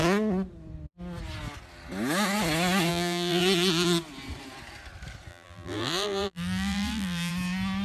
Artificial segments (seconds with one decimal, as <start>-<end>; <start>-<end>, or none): 2.9-3.4; 5.3-7.3